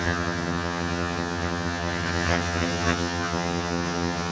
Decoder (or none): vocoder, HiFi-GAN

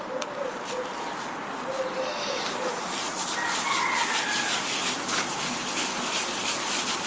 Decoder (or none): none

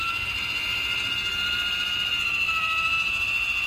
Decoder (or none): none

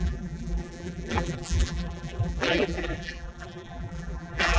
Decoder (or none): vocoder, BigVGAN v2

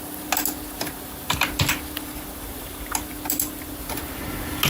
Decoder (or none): none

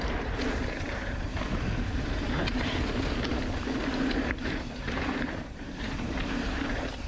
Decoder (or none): vocoder, BigVGAN v2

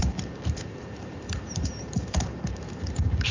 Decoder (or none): vocoder, BigVGAN v2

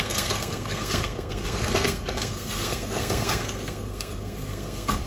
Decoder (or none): codec, SNAC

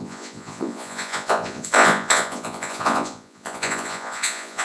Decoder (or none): vocoder, Vocos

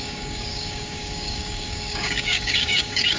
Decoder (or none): codec, DAC